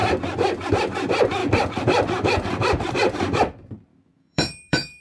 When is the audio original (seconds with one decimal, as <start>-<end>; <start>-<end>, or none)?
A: 0.0-3.9